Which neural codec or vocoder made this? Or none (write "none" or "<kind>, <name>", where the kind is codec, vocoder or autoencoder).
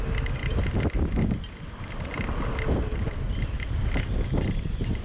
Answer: none